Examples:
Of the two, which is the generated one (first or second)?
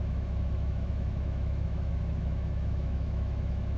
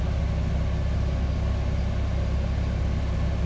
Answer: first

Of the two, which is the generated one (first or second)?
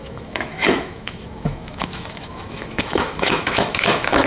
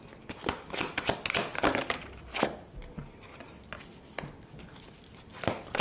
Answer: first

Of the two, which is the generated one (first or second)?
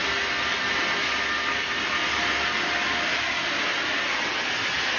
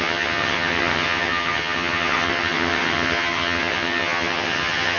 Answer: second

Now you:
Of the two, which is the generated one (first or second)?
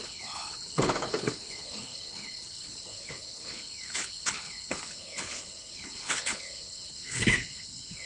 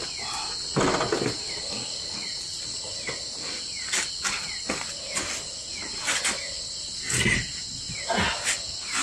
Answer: first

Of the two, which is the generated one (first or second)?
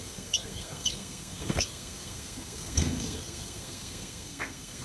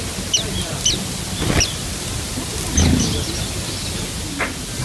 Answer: first